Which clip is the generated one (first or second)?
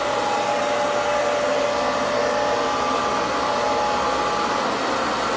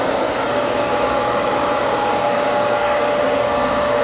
second